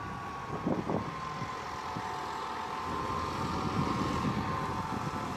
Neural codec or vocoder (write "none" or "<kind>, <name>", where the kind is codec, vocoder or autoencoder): none